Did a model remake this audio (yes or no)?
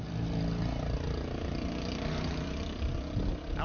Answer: no